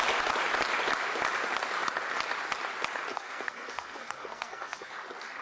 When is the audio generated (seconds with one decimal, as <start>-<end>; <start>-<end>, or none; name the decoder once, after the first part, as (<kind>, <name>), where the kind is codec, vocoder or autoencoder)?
3.1-4.9 (codec, SNAC)